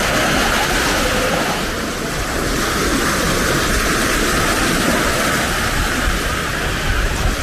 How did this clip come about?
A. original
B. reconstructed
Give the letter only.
A